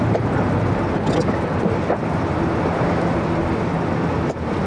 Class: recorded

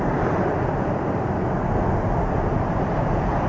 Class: recorded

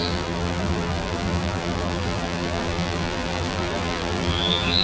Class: remade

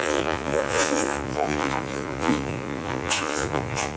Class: remade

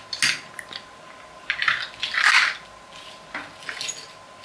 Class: recorded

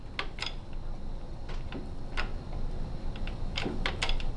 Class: recorded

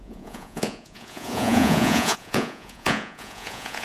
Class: remade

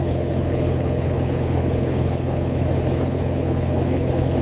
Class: remade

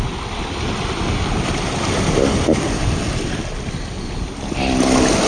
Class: recorded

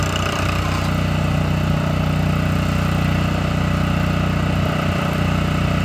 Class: recorded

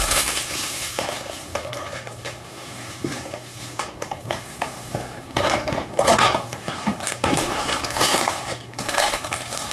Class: remade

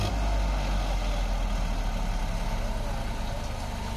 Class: recorded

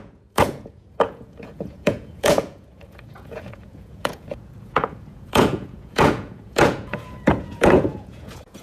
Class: remade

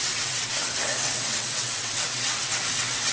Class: remade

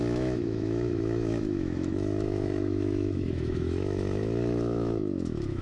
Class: remade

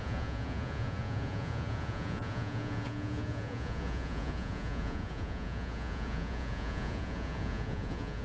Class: remade